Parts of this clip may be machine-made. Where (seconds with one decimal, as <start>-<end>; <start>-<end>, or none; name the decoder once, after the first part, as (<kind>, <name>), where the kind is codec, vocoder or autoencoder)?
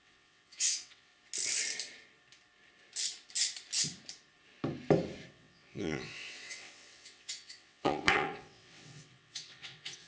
0.0-1.1 (vocoder, WaveNeXt); 5.3-10.1